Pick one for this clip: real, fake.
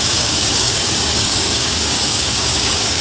fake